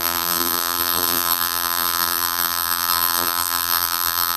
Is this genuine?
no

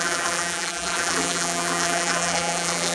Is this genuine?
no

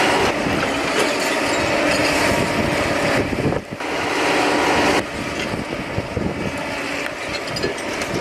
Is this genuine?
yes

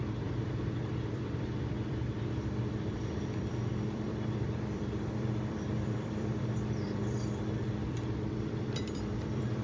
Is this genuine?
no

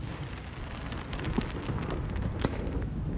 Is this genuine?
yes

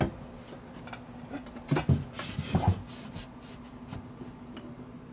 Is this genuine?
yes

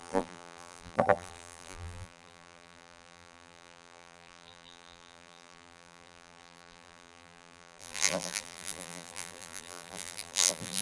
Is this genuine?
no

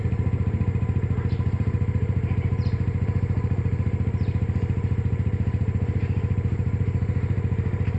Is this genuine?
no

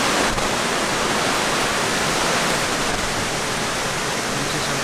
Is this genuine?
yes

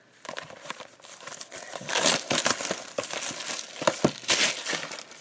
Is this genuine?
yes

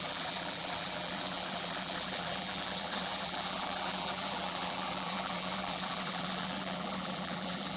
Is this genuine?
no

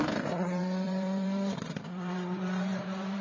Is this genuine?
no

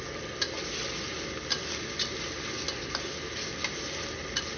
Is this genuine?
yes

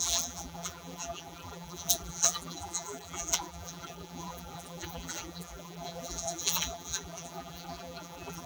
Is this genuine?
no